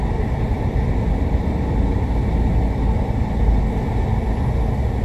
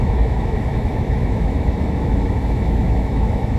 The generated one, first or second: second